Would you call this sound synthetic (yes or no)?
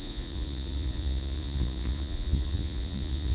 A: yes